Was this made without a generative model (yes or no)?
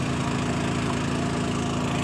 yes